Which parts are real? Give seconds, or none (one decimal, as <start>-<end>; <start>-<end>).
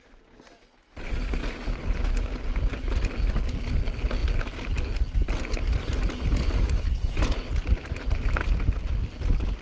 0.0-9.6